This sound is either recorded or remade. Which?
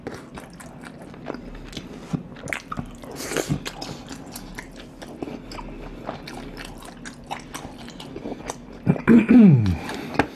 recorded